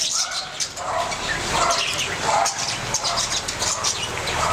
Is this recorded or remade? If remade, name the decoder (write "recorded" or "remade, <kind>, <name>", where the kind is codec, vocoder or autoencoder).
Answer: remade, vocoder, BigVGAN v2